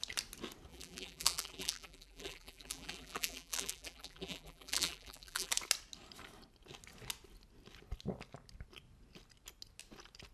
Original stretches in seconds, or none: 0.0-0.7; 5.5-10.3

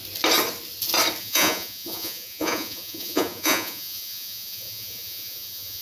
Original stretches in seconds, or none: 0.0-1.2